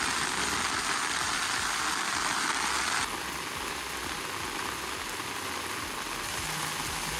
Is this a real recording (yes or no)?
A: yes